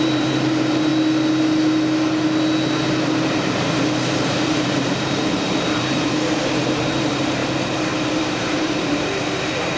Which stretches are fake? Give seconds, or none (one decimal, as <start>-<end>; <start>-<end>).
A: 0.0-0.9; 3.3-7.4; 8.2-9.8